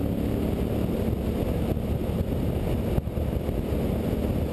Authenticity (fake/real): real